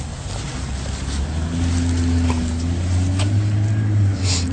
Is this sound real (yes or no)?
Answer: yes